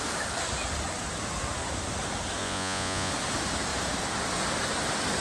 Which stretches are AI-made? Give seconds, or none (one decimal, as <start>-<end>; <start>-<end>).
2.4-3.1